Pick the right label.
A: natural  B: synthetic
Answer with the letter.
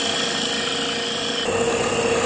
A